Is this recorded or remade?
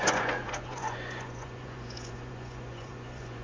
remade